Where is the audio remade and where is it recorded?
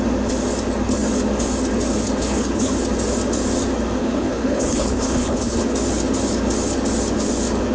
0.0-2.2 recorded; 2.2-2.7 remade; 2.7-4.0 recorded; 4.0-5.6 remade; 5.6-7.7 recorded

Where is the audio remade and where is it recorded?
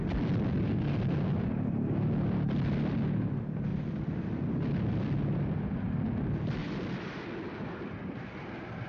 0.0-6.6 recorded; 6.6-8.9 remade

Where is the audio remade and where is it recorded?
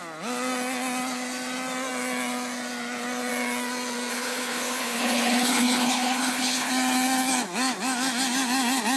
0.0-4.1 recorded; 4.1-6.7 remade; 6.7-9.0 recorded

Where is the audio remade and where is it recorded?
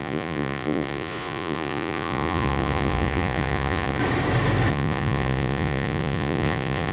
0.0-4.0 remade; 4.0-4.7 recorded; 4.7-6.9 remade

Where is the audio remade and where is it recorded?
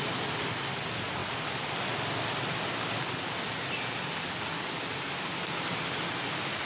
0.0-6.7 recorded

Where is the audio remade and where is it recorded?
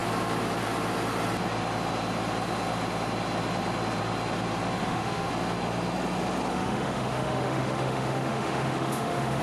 0.0-4.8 recorded; 4.8-5.3 remade; 5.3-6.5 recorded; 6.5-9.4 remade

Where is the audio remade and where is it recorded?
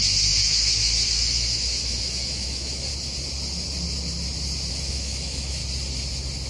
0.0-2.9 remade; 2.9-4.7 recorded; 4.7-5.6 remade; 5.6-6.5 recorded